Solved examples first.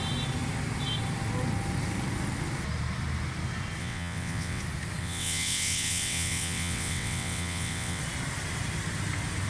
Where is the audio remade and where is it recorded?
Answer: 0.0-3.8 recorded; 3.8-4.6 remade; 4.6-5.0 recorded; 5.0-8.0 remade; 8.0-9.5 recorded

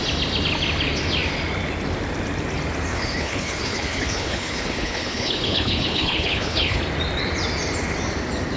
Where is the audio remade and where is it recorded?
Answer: 0.0-2.9 recorded; 2.9-6.8 remade; 6.8-8.6 recorded

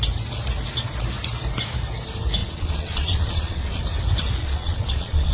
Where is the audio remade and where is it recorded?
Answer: 0.0-2.4 recorded; 2.4-3.8 remade; 3.8-4.4 recorded; 4.4-5.3 remade

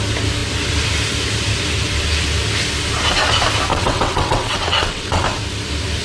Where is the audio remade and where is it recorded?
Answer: 0.0-3.7 recorded; 3.7-5.2 remade; 5.2-6.0 recorded

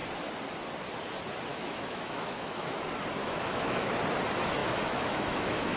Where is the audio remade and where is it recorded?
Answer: 0.0-1.5 recorded; 1.5-2.8 remade; 2.8-3.2 recorded; 3.2-3.9 remade; 3.9-4.6 recorded; 4.6-5.8 remade

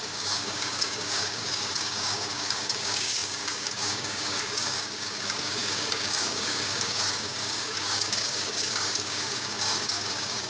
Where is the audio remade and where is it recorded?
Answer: 0.0-10.5 remade

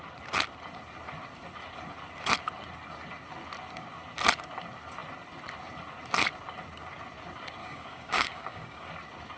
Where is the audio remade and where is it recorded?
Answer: 0.0-7.6 recorded; 7.6-8.9 remade; 8.9-9.4 recorded

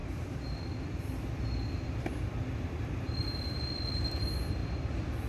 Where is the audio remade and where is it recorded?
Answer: 0.0-5.3 remade